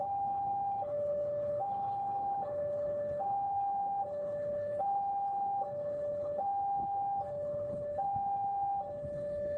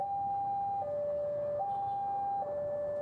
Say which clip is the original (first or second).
second